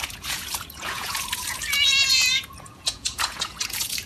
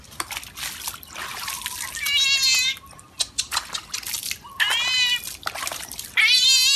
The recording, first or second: second